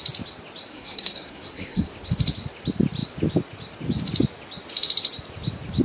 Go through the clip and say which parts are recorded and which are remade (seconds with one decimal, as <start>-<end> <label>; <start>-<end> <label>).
0.0-0.7 recorded; 0.7-1.9 remade; 1.9-5.8 recorded